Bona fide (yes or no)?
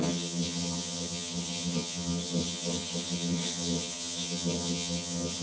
no